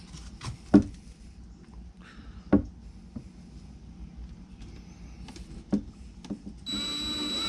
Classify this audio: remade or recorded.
recorded